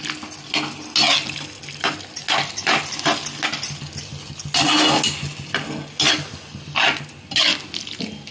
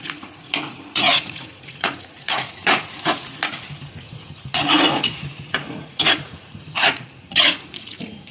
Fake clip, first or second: second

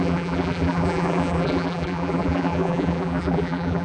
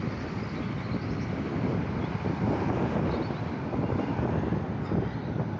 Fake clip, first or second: first